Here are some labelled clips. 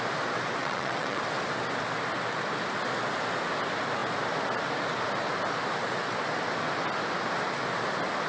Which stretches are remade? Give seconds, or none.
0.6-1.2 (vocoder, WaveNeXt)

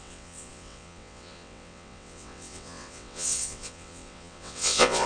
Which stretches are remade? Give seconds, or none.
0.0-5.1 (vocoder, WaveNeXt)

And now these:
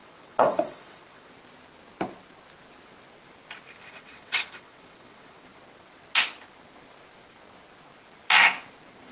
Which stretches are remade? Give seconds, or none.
0.0-1.3 (vocoder, WaveNeXt); 3.8-5.4